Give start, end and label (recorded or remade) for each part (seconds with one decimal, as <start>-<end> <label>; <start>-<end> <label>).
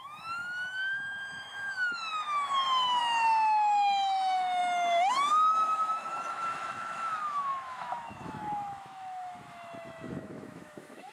0.0-11.1 remade